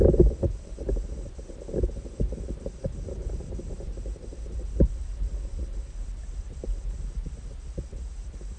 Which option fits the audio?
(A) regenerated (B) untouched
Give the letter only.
B